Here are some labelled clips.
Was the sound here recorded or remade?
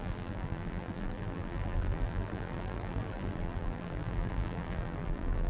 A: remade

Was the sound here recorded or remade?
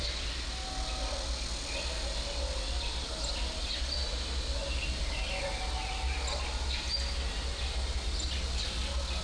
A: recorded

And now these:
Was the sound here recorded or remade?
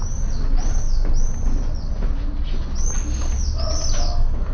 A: recorded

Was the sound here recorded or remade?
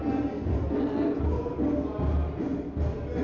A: recorded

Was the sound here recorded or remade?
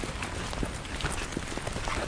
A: recorded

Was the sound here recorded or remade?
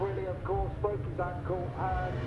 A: recorded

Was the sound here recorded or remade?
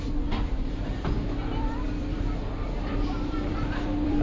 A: remade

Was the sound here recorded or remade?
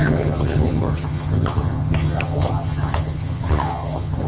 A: remade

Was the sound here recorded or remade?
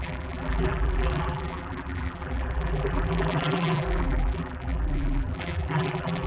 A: remade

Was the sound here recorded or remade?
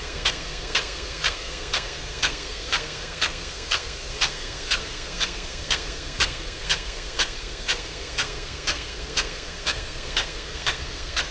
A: remade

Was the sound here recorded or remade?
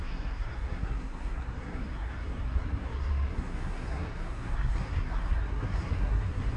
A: remade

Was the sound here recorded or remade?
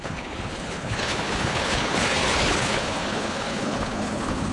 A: remade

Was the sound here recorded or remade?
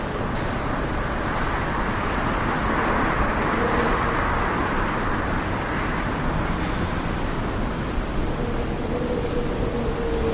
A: recorded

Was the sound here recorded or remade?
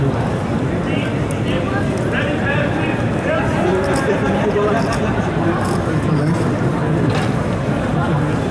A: remade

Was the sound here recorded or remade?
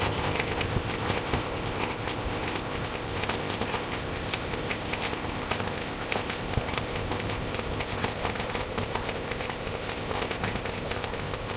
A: remade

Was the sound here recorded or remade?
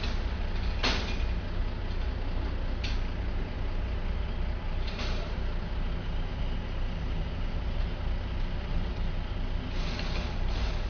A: recorded